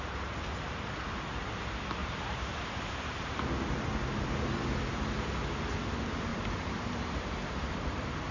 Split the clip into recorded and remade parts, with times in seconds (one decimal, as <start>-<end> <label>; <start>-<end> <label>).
0.0-2.0 recorded; 2.0-3.5 remade; 3.5-6.3 recorded; 6.3-7.7 remade; 7.7-8.3 recorded

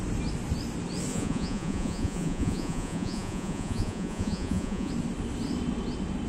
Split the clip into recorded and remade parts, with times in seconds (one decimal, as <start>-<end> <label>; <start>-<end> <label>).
0.0-1.1 recorded; 1.1-4.9 remade; 4.9-6.3 recorded

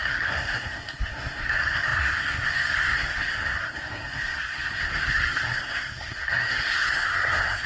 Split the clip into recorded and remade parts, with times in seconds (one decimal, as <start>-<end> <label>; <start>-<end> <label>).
0.0-7.7 remade

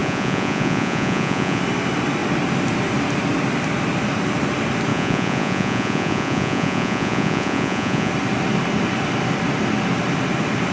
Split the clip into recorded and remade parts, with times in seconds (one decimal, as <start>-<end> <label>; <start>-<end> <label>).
0.0-1.6 remade; 1.6-4.9 recorded; 4.9-8.1 remade; 8.1-10.7 recorded

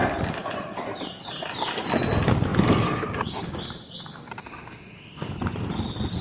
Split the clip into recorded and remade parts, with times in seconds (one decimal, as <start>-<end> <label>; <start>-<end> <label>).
0.0-4.4 recorded; 4.4-5.3 remade; 5.3-6.2 recorded